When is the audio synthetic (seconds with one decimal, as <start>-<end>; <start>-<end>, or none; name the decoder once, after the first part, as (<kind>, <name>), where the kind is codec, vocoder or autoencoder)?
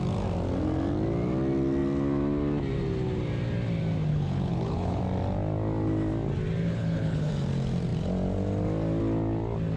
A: 4.1-5.0 (codec, HILCodec); 6.6-7.3